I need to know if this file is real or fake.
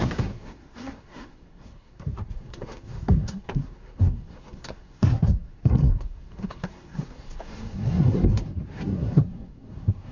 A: fake